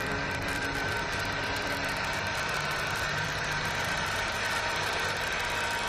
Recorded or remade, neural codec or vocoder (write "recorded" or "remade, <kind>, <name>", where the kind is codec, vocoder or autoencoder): remade, vocoder, BigVGAN v2